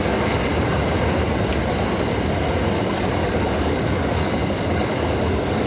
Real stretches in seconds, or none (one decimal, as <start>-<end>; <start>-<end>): 0.5-2.8